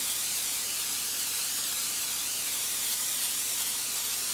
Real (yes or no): no